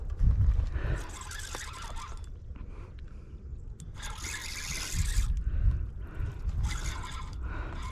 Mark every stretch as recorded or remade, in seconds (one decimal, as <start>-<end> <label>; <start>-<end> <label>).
0.0-7.9 recorded